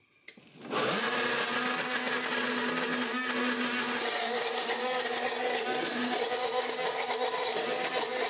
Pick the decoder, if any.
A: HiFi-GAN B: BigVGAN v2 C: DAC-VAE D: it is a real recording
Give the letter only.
D